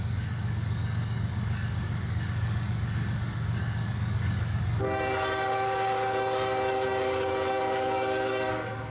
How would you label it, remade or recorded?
remade